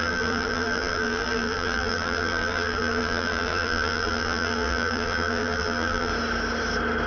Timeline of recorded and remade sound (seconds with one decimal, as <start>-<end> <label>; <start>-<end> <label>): 0.0-6.1 remade; 6.1-7.1 recorded